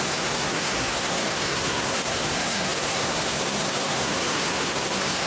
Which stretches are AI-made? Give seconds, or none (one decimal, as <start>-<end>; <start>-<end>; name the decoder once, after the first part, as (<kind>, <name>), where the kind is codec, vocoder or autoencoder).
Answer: 0.0-5.3 (codec, SNAC)